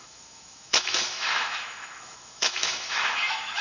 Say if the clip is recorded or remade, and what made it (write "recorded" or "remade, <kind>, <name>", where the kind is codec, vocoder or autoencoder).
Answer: remade, autoencoder, DAC-VAE